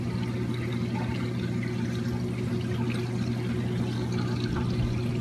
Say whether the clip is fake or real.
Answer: real